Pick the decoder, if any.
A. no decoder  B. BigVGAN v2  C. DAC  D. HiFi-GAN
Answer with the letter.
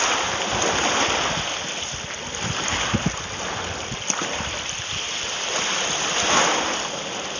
A